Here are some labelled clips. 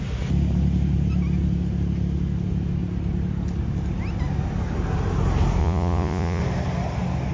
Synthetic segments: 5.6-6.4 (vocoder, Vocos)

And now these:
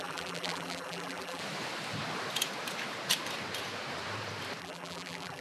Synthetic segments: 0.0-1.4 (vocoder, BigVGAN v2); 4.6-5.4